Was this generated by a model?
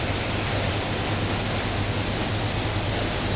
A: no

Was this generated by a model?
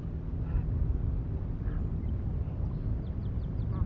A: no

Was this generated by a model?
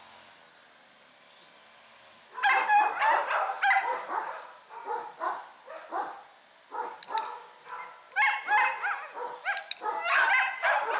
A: no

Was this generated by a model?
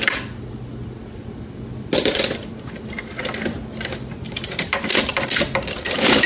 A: no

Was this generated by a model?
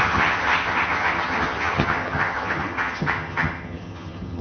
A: yes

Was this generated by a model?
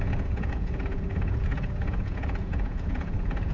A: yes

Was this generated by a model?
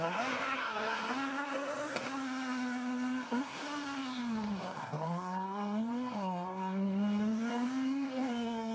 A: yes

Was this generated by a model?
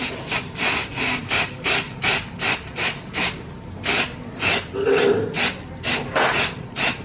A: no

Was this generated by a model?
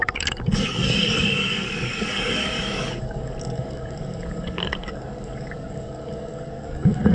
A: yes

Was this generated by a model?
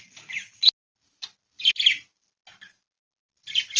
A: no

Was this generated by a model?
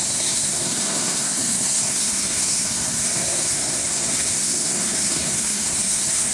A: yes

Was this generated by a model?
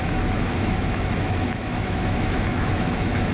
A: yes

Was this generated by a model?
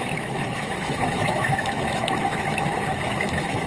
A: yes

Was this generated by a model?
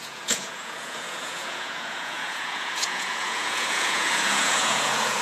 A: yes